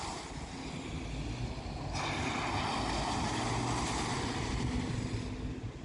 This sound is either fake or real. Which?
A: real